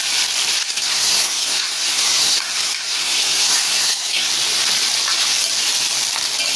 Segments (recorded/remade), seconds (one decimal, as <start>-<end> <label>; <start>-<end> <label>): 0.0-0.6 recorded; 0.6-4.3 remade; 4.3-6.6 recorded